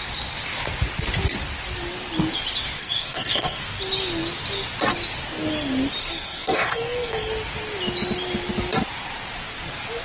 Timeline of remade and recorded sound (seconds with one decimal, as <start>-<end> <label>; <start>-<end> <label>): 0.0-2.8 recorded; 2.8-3.6 remade; 3.6-6.0 recorded; 6.0-7.3 remade; 7.3-10.0 recorded